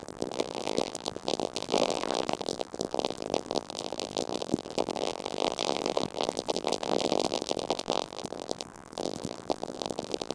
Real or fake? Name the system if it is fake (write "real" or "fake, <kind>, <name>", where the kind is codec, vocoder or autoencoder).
fake, vocoder, BigVGAN v2